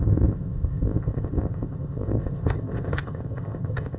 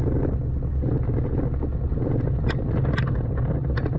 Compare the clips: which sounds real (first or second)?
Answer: second